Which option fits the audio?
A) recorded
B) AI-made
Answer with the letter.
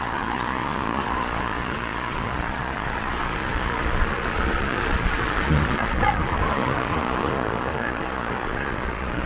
B